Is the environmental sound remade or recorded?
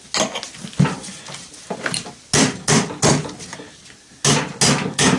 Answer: recorded